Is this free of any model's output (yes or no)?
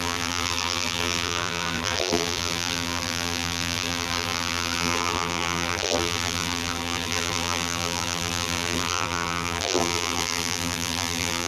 no